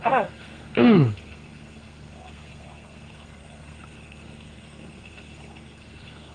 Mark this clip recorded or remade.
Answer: remade